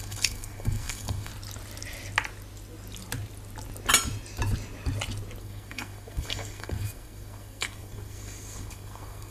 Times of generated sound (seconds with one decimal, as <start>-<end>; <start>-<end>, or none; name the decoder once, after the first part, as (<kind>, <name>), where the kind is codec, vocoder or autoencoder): 0.0-1.3 (codec, SNAC); 5.4-9.3